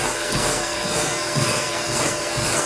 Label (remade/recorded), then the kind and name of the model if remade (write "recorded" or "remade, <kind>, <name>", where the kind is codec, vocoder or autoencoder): remade, codec, SNAC